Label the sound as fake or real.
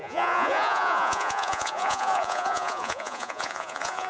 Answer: fake